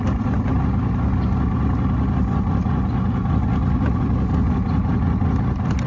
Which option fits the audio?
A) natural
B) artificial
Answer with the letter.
A